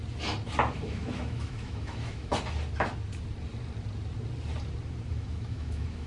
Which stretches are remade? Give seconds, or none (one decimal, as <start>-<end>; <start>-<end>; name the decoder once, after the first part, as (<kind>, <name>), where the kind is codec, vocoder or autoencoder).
0.7-2.3 (autoencoder, DAC-VAE); 5.1-6.1